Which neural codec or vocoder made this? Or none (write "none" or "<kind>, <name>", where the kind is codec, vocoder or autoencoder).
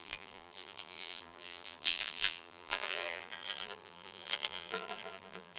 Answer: vocoder, BigVGAN v2